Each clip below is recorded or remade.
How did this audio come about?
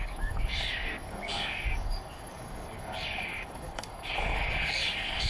remade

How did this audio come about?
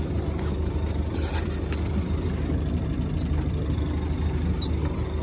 recorded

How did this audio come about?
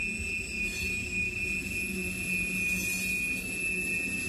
recorded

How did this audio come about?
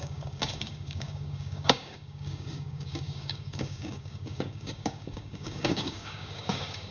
remade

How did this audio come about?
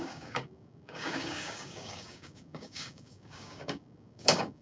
remade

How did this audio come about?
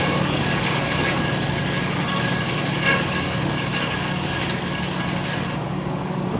remade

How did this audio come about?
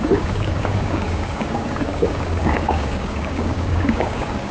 remade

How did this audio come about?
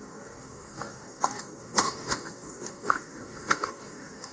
remade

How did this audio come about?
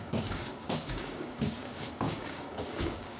remade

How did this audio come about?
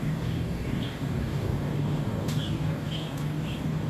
remade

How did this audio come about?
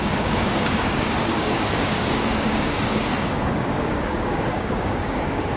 remade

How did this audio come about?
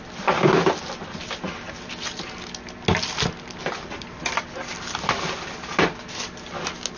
recorded